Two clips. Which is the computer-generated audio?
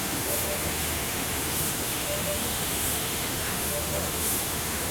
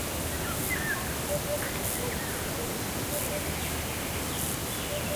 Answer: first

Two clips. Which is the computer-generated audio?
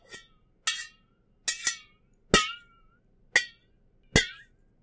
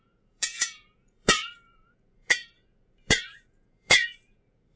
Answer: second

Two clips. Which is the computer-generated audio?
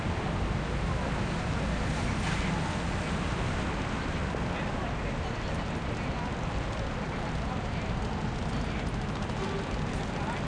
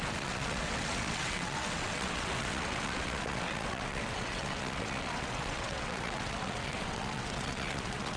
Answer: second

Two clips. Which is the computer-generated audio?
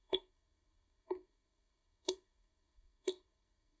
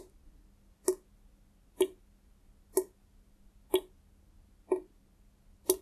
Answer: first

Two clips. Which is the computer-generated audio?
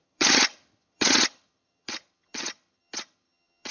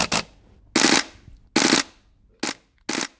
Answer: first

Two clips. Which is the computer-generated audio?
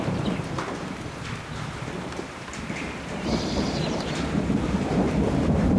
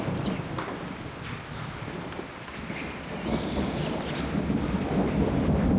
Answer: first